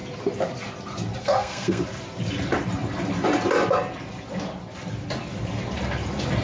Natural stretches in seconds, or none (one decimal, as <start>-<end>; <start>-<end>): 0.0-1.2; 1.8-6.4